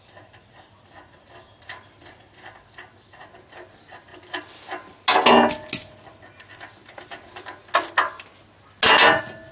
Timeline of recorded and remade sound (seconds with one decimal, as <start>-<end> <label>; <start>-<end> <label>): 0.0-9.5 recorded